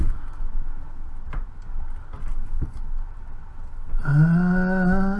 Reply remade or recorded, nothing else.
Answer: recorded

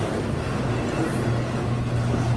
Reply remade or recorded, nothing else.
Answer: recorded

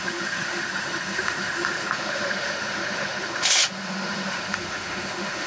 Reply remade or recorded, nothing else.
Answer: remade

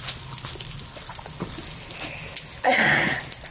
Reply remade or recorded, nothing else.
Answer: recorded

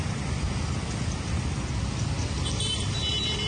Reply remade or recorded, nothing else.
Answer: recorded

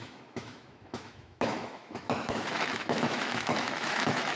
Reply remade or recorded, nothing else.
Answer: remade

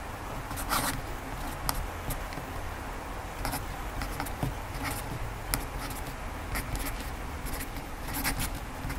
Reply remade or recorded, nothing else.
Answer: recorded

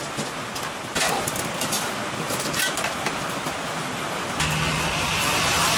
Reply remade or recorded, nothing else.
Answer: recorded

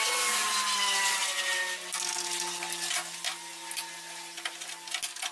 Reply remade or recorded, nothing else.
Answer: recorded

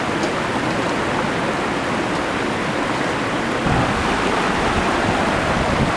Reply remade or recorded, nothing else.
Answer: recorded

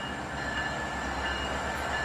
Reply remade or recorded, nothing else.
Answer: recorded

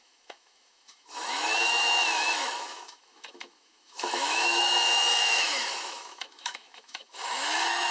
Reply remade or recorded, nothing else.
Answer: remade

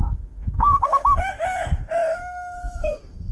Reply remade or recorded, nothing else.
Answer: remade